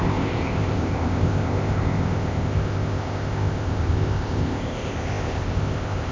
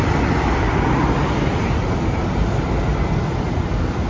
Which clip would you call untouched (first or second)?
second